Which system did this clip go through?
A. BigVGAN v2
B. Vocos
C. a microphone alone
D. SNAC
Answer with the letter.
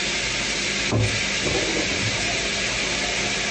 C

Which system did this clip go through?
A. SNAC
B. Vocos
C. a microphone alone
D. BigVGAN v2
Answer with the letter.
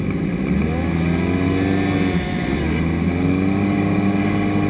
C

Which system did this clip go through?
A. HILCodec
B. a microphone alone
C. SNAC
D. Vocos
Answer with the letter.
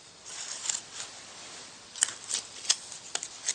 B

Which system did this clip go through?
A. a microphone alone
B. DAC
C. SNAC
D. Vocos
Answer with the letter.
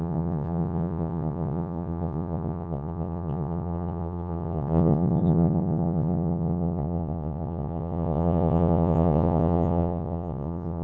D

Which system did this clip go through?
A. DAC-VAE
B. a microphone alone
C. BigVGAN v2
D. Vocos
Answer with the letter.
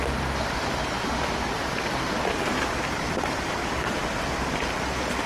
B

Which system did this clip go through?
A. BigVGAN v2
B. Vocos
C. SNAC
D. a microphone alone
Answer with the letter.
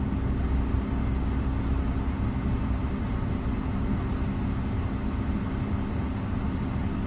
D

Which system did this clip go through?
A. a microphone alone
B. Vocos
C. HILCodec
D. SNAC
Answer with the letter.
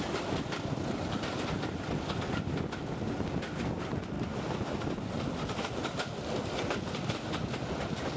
A